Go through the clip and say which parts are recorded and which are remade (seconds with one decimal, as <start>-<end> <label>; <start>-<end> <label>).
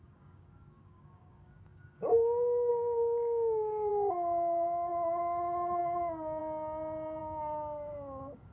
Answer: 0.0-3.9 remade; 3.9-5.8 recorded; 5.8-6.4 remade; 6.4-7.2 recorded; 7.2-8.5 remade